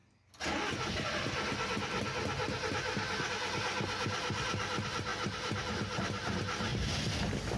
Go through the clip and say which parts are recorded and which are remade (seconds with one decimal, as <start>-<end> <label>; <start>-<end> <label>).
0.0-7.6 recorded